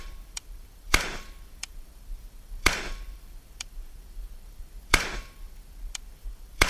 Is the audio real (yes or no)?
no